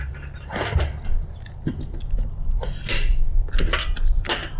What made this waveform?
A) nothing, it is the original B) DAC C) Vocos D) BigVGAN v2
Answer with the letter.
A